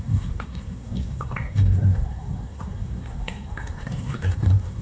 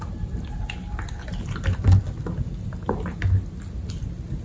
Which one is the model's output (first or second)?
first